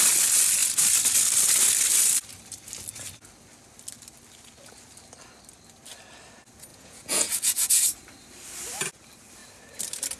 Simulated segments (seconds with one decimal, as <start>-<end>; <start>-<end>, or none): 6.7-7.8